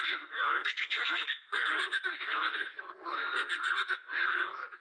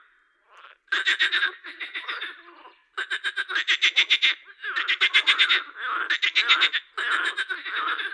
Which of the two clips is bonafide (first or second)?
second